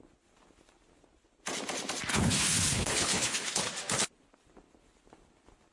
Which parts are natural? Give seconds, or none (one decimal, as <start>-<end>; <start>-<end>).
0.0-2.1; 3.6-5.7